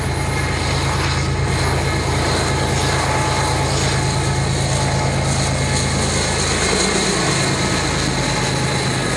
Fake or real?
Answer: real